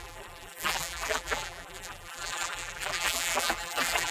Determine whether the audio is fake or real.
fake